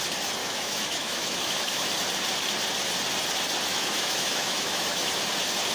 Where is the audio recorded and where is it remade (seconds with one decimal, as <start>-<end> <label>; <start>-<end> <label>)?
0.0-0.4 recorded; 0.4-1.9 remade; 1.9-3.7 recorded; 3.7-5.1 remade; 5.1-5.7 recorded